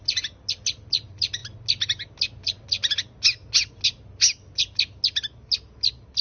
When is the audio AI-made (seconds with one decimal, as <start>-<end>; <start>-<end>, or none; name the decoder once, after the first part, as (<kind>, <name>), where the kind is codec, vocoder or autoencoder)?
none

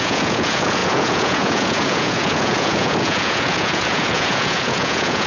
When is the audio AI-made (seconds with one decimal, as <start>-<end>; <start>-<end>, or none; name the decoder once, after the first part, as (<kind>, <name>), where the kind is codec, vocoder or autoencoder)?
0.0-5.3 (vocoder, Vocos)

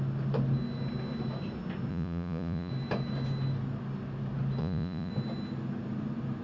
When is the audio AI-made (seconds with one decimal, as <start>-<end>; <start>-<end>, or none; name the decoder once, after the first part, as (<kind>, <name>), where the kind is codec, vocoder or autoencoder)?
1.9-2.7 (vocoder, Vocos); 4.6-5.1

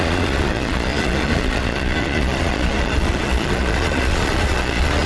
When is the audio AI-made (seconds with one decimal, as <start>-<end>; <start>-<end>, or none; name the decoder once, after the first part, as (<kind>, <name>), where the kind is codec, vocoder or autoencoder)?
0.0-5.1 (vocoder, Vocos)